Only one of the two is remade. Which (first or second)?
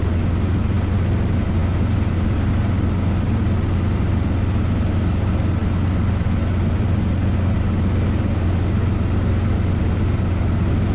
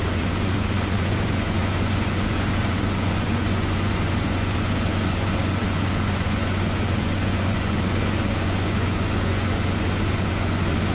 second